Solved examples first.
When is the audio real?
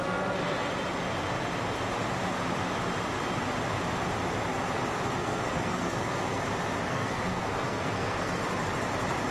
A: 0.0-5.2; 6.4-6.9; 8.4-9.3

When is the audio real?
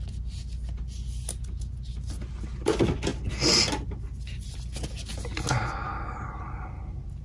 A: 0.0-7.2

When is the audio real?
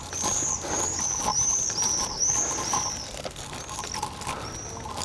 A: 0.0-5.0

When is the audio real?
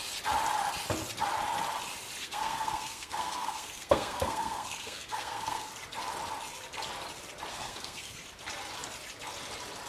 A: 0.0-2.2; 5.7-7.5; 8.2-9.9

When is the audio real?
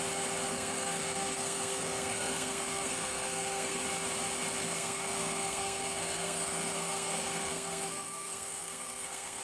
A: 0.0-0.5; 3.8-4.6